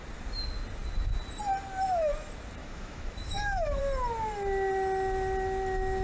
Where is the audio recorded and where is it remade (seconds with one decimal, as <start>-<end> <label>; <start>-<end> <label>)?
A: 0.0-2.6 recorded; 2.6-3.8 remade; 3.8-6.0 recorded